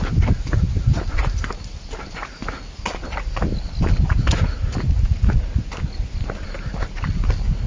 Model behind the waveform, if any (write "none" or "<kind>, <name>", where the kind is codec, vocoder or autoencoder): none